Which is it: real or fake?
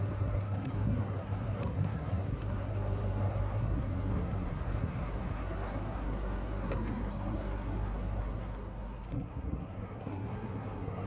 fake